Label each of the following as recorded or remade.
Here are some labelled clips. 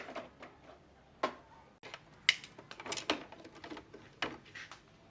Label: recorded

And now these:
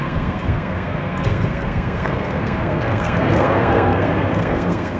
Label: remade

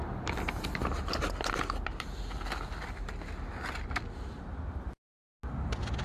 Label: recorded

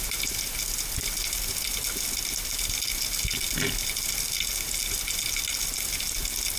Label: recorded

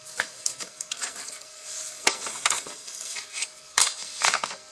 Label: remade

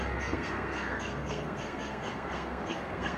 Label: remade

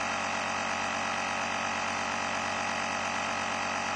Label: recorded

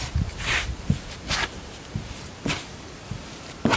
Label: recorded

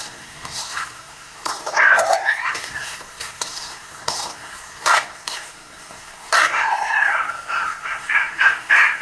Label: remade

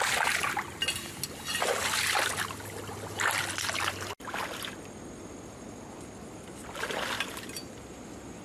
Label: recorded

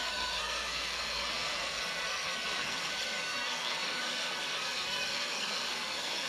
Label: remade